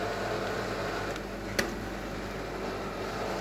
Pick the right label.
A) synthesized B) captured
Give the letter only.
B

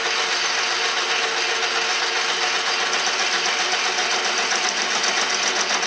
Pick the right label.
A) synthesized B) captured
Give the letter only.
B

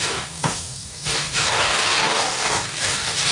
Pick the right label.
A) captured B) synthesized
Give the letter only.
B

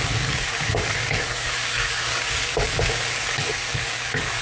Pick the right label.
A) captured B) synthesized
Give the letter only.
B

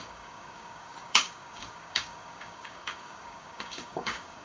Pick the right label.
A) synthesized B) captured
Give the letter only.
A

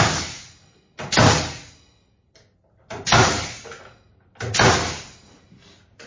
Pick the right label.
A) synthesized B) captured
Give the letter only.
B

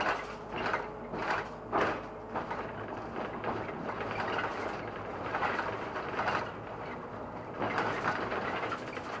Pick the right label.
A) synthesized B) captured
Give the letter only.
B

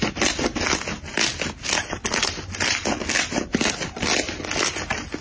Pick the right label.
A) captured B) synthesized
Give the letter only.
A